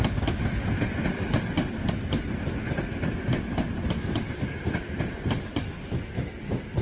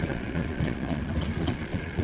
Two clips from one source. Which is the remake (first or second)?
second